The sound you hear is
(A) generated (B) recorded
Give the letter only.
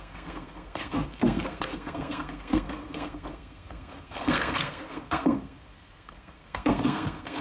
A